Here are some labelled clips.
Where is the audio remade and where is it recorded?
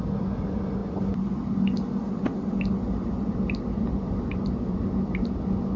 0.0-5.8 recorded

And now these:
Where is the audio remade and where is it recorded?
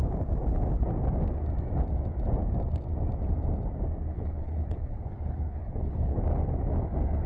0.0-4.1 recorded; 4.1-6.2 remade; 6.2-7.3 recorded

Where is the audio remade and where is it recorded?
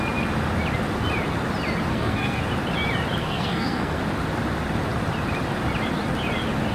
0.0-1.9 recorded; 1.9-2.4 remade; 2.4-3.2 recorded; 3.2-4.0 remade; 4.0-6.7 recorded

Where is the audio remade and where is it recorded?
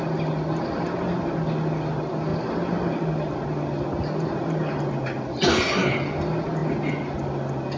0.0-7.8 recorded